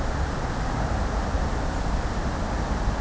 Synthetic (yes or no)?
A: no